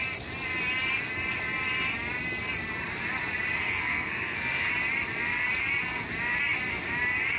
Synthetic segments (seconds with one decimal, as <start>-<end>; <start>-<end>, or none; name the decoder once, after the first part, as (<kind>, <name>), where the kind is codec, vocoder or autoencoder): 3.6-4.7 (codec, SNAC)